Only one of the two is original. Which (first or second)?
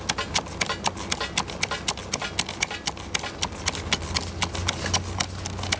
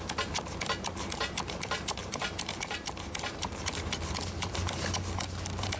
first